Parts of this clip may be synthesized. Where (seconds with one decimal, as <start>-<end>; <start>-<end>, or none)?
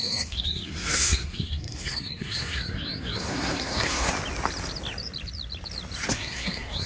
0.0-4.1; 6.1-6.9